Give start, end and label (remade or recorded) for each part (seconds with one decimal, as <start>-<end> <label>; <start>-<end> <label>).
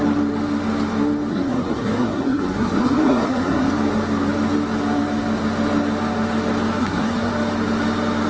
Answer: 0.0-1.3 recorded; 1.3-3.7 remade; 3.7-6.8 recorded; 6.8-7.3 remade; 7.3-8.3 recorded